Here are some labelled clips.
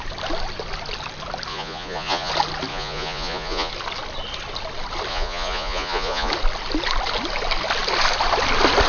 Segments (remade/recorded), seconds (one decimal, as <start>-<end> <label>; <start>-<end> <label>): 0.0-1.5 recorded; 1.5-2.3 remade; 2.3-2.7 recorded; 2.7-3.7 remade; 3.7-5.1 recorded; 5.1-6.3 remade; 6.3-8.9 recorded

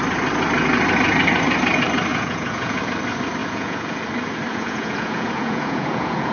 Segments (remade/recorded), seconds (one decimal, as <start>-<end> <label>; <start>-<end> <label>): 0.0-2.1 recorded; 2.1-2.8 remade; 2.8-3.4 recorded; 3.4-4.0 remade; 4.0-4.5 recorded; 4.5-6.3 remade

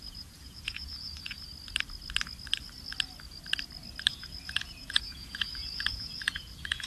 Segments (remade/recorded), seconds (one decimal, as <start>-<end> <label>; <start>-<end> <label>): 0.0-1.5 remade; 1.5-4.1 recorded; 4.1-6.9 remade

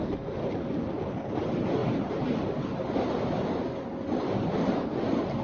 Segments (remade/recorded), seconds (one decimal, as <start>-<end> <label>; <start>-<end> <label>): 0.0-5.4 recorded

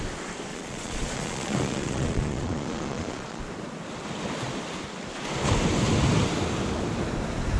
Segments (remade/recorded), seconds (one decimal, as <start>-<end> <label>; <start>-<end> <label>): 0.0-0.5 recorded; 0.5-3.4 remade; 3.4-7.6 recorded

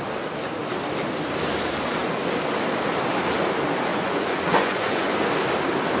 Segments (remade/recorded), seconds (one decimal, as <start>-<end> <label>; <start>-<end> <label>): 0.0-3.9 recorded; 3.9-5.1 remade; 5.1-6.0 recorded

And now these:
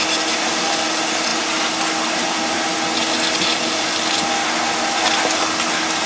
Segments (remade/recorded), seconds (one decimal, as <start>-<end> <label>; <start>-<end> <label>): 0.0-6.1 recorded